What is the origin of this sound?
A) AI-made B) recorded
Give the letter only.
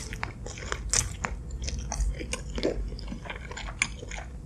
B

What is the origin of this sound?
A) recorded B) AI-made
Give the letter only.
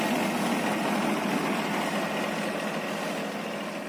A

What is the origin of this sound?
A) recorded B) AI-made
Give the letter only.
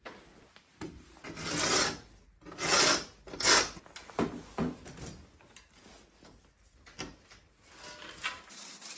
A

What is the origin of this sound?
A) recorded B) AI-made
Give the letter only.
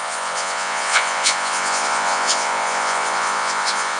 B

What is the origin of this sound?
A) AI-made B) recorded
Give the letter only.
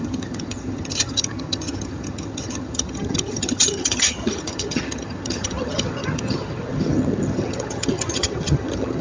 A